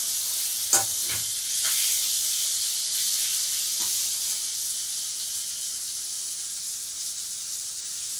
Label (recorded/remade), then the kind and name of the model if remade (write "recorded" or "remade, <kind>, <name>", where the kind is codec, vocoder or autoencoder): recorded